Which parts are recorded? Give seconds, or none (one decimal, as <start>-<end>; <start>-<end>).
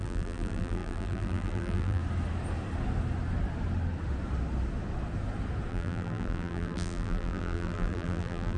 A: 2.0-5.7